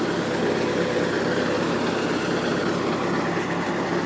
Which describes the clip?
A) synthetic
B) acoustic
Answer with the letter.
B